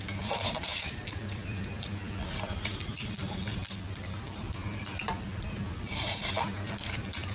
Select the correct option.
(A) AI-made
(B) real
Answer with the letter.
A